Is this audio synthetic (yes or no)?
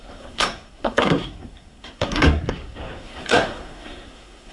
yes